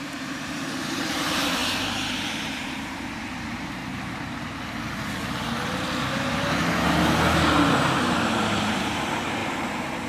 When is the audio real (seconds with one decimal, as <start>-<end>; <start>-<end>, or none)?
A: 1.6-2.2; 3.8-8.0